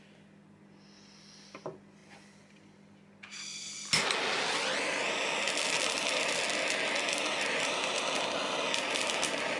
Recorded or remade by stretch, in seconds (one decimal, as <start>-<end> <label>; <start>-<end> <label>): 0.0-9.6 recorded